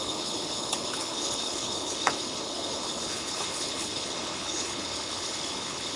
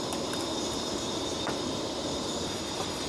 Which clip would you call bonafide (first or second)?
second